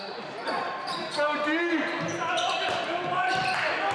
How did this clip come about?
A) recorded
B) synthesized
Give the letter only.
A